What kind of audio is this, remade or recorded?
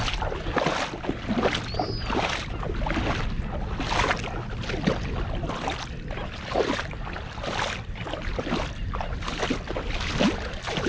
recorded